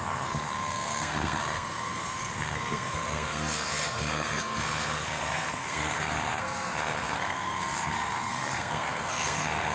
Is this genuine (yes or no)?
no